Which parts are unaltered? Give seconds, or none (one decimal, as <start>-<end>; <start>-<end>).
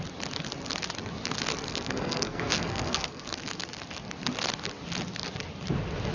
0.0-1.7; 3.2-6.1